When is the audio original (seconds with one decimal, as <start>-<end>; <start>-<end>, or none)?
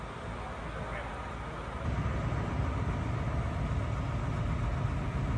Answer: 0.0-5.4